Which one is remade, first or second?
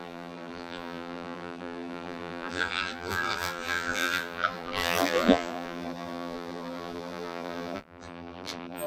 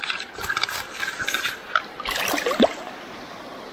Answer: first